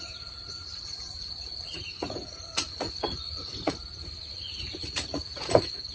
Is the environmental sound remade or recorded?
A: remade